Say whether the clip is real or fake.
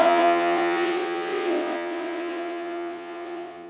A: fake